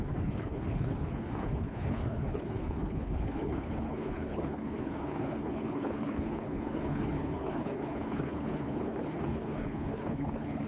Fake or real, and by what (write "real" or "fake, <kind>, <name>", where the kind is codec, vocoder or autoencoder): fake, codec, HILCodec